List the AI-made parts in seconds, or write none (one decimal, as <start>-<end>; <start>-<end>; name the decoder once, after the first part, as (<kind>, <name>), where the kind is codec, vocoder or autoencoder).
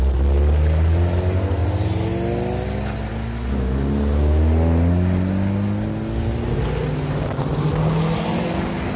none